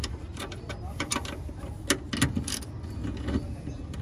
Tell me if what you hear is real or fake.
real